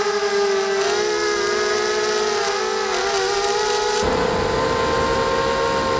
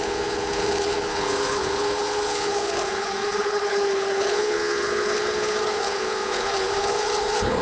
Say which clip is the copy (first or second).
second